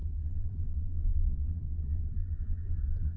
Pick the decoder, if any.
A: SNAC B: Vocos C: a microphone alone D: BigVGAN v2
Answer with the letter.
B